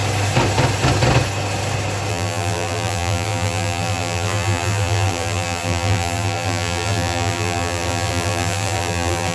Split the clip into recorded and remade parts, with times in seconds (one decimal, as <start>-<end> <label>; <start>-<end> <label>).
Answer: 0.0-2.1 recorded; 2.1-9.3 remade

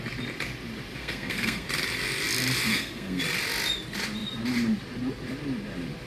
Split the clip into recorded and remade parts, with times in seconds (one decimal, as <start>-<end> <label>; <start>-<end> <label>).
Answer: 0.0-1.0 recorded; 1.0-1.7 remade; 1.7-2.7 recorded; 2.7-3.2 remade; 3.2-6.1 recorded